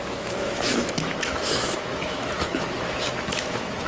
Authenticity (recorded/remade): remade